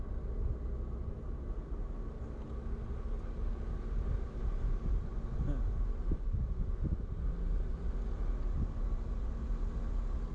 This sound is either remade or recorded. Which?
recorded